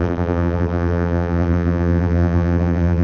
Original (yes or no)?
no